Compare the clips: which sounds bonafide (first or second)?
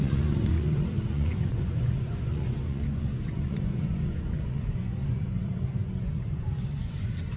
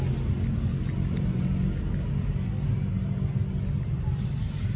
second